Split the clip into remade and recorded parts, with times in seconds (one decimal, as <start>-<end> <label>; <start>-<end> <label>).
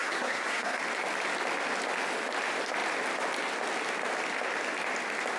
0.0-0.8 remade; 0.8-5.4 recorded